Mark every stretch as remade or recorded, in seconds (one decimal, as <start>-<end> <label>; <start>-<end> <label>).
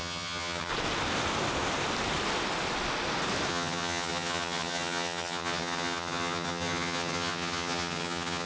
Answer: 0.0-0.7 remade; 0.7-3.5 recorded; 3.5-8.5 remade